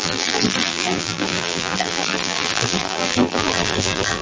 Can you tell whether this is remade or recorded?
remade